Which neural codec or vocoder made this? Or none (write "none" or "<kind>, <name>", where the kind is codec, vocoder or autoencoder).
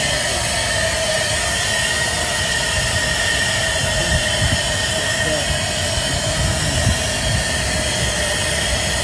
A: none